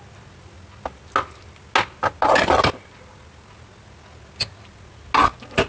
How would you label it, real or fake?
real